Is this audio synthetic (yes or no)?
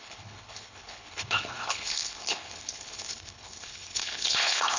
yes